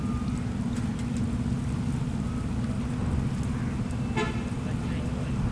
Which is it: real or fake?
real